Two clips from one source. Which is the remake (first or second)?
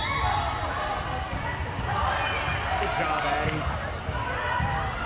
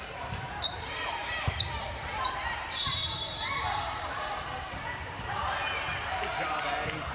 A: second